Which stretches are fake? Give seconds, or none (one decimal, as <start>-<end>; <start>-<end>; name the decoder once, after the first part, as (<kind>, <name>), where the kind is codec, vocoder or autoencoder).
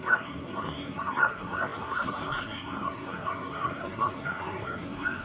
0.0-5.2 (codec, SNAC)